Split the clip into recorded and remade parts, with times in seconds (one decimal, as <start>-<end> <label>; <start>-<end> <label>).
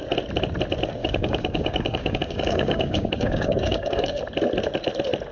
0.0-1.0 recorded; 1.0-4.2 remade; 4.2-5.3 recorded